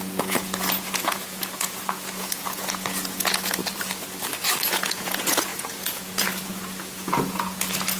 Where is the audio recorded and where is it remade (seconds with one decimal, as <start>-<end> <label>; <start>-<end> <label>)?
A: 0.0-3.6 remade; 3.6-4.6 recorded; 4.6-8.0 remade